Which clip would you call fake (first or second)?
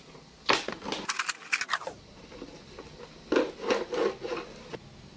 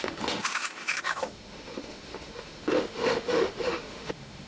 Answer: second